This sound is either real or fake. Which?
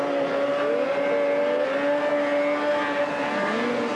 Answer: real